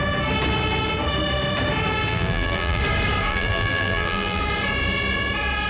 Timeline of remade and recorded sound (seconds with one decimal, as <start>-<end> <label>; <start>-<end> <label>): 0.0-2.1 recorded; 2.1-2.8 remade; 2.8-3.3 recorded; 3.3-4.4 remade; 4.4-5.7 recorded